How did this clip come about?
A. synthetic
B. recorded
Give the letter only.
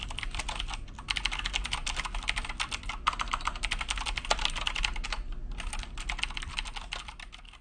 B